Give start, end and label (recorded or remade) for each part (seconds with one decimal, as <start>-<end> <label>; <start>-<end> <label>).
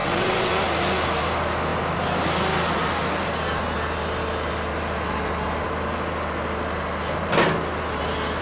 0.0-0.5 remade; 0.5-8.4 recorded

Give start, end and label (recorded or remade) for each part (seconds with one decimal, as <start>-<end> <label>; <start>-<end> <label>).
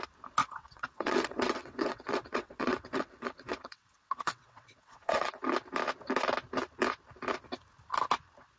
0.0-0.4 recorded; 0.4-5.3 remade; 5.3-8.6 recorded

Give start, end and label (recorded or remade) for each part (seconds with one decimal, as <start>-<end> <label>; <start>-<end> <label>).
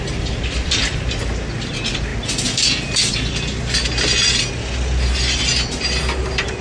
0.0-6.6 recorded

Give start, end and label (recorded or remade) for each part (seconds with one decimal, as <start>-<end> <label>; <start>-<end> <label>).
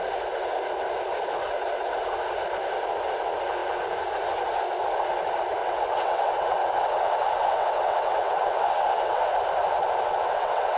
0.0-5.6 recorded; 5.6-9.2 remade; 9.2-9.8 recorded; 9.8-10.8 remade